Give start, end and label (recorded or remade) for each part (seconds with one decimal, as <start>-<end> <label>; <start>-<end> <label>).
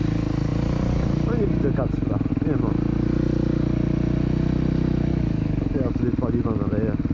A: 0.0-5.1 recorded; 5.1-6.0 remade; 6.0-7.1 recorded